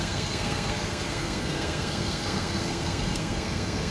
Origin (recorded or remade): remade